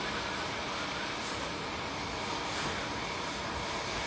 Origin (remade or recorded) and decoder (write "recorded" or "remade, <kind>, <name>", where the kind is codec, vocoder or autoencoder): recorded